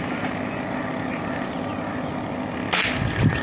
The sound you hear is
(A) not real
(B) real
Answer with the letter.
B